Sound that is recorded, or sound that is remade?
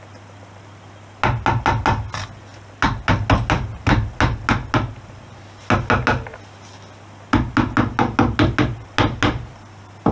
recorded